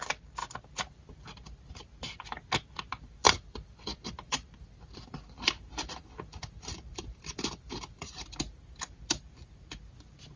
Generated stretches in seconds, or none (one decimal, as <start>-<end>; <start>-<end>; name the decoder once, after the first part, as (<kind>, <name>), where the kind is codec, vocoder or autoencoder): 3.2-8.4 (vocoder, BigVGAN v2)